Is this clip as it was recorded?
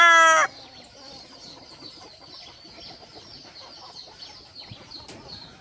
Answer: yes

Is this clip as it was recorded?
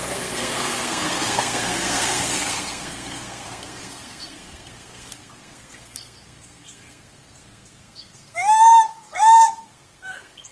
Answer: no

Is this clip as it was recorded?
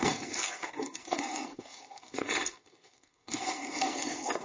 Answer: no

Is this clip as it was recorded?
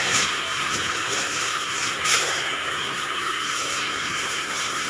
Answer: no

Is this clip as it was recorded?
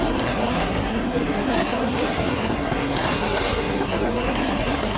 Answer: no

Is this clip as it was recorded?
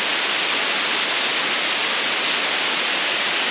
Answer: yes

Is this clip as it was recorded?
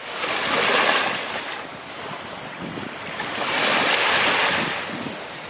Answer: yes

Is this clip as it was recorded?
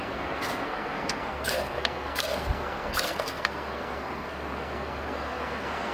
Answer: no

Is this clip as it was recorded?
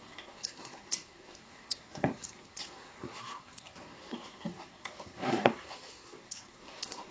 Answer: no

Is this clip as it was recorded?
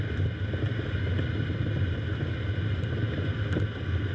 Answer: yes